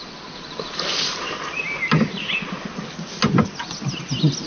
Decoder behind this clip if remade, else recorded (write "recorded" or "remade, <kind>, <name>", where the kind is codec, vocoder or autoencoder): recorded